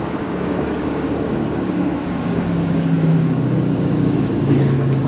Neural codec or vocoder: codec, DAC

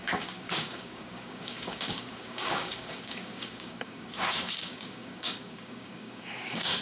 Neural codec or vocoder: codec, DAC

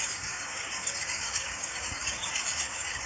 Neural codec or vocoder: codec, DAC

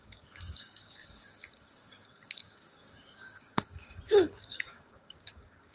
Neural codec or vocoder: codec, DAC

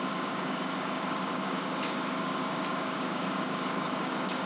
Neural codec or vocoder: codec, DAC